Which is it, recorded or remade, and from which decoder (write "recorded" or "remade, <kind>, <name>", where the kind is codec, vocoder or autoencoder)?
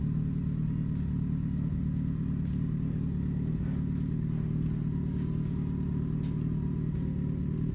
recorded